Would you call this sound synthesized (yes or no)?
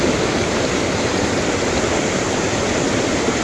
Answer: no